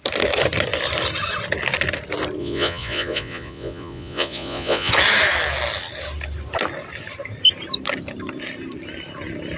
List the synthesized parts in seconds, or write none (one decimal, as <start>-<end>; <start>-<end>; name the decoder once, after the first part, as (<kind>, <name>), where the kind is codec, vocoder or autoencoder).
2.4-4.9 (vocoder, Vocos)